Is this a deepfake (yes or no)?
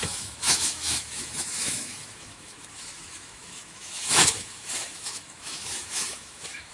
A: yes